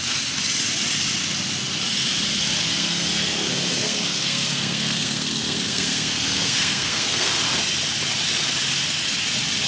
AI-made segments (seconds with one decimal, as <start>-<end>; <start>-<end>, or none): 2.6-7.3